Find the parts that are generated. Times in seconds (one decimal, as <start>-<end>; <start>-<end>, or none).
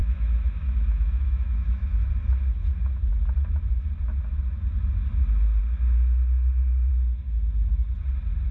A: 0.0-2.1